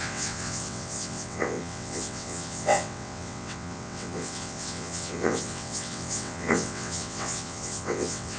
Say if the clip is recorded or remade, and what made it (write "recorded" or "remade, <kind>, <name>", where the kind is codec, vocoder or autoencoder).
remade, vocoder, WaveNeXt